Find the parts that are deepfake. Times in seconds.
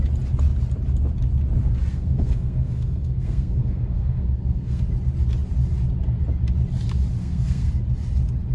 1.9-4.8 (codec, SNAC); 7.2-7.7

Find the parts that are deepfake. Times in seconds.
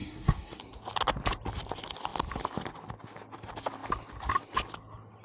0.0-0.6 (codec, SNAC)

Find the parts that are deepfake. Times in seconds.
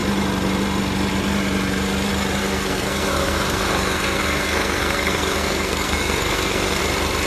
2.4-6.8 (codec, SNAC)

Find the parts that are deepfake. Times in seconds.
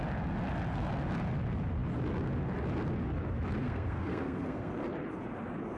3.6-4.7 (codec, SNAC)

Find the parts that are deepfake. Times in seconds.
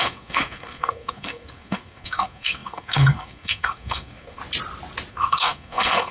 0.0-4.4 (codec, SNAC); 5.1-6.1